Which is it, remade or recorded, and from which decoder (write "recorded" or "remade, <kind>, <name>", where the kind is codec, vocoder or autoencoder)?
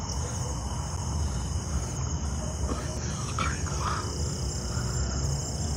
recorded